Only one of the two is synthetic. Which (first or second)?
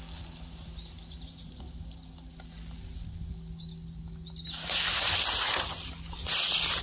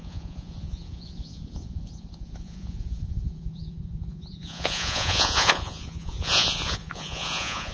second